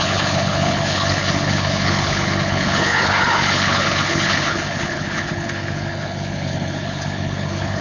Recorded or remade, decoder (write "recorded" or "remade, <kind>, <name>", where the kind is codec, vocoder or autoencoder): remade, codec, HILCodec